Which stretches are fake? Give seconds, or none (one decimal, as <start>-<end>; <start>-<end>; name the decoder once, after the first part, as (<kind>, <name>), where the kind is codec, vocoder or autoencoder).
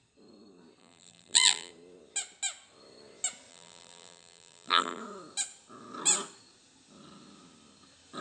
0.8-1.7 (vocoder, BigVGAN v2); 3.5-5.0